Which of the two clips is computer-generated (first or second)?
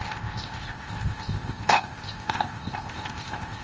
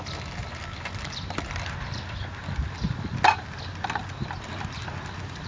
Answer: first